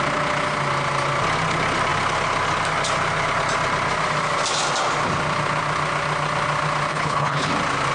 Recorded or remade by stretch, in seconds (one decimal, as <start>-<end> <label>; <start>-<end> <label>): 0.0-6.9 recorded; 6.9-7.5 remade; 7.5-7.9 recorded